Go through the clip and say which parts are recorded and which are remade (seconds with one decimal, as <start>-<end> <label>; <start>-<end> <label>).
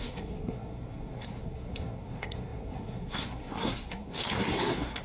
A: 0.0-5.0 remade